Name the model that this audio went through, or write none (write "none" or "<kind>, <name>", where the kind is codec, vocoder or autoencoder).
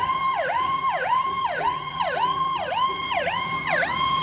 vocoder, Vocos